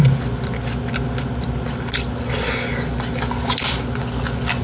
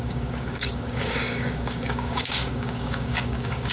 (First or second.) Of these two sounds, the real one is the first